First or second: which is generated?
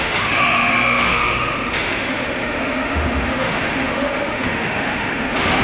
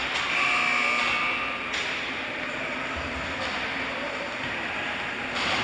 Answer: first